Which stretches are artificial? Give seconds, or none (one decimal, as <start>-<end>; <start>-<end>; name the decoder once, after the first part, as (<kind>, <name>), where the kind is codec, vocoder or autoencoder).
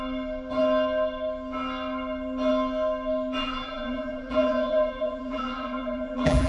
3.4-6.5 (vocoder, BigVGAN v2)